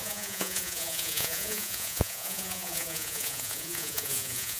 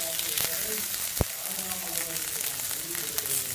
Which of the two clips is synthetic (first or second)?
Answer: first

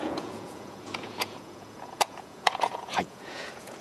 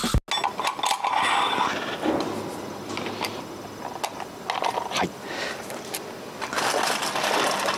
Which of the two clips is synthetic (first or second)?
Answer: first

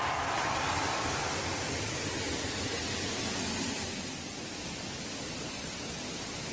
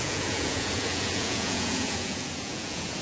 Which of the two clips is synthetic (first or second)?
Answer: second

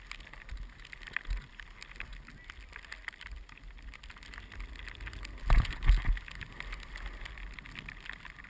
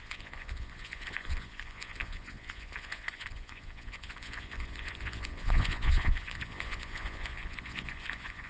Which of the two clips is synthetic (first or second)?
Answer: second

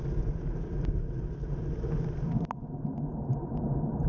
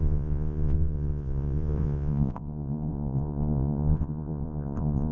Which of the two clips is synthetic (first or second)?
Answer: second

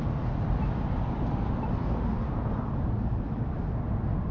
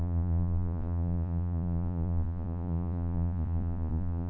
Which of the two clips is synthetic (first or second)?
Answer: second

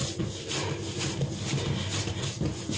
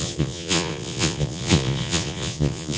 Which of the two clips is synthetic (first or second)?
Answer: second